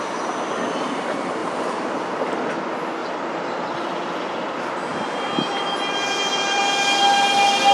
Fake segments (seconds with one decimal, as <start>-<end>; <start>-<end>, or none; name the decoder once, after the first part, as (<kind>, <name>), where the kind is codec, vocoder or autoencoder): 1.4-2.3 (vocoder, BigVGAN v2); 3.0-3.7; 4.9-6.6